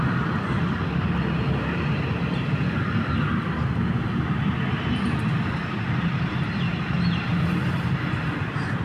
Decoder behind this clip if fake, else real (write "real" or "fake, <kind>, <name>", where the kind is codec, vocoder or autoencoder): real